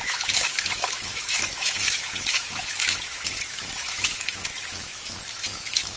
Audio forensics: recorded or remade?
remade